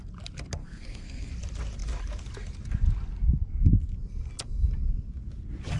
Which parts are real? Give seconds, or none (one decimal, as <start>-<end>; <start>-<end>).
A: 0.0-0.6; 1.3-5.8